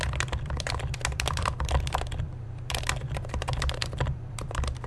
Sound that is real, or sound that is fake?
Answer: fake